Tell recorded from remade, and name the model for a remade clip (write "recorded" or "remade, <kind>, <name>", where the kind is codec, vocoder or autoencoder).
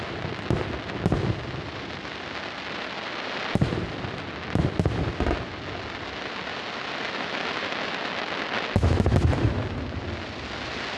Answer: recorded